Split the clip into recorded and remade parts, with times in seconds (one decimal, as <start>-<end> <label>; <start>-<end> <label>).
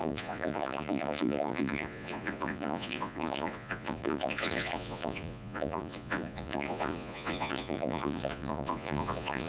0.0-9.5 remade